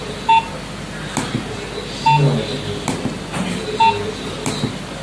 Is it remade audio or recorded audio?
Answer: recorded